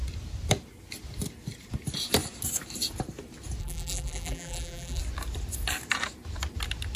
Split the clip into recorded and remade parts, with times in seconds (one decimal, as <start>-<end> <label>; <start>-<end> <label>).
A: 0.0-3.6 recorded; 3.6-5.0 remade; 5.0-7.0 recorded